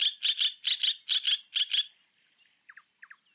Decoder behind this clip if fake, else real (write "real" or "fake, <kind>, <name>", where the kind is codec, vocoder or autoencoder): real